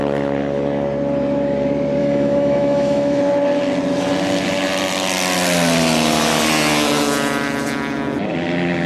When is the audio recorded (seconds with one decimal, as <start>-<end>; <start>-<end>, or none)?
0.0-2.0; 3.2-8.9